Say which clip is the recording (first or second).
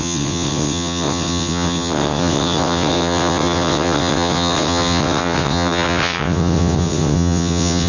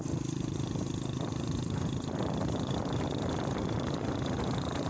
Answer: second